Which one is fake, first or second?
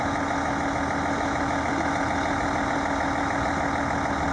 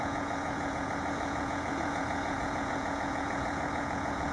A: second